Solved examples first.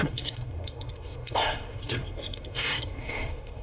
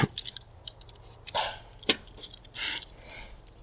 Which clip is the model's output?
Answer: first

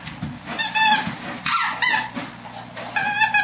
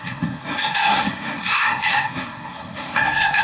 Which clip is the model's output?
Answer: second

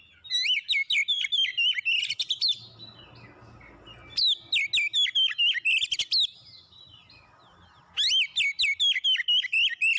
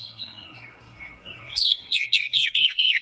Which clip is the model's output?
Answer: second